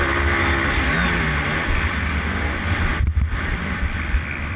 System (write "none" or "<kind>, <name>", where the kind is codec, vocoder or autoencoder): none